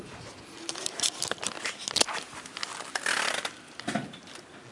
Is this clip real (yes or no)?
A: yes